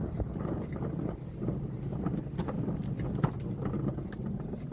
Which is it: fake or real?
real